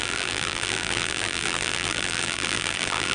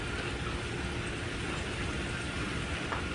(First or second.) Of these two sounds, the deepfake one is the first